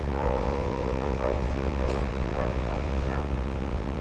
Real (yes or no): no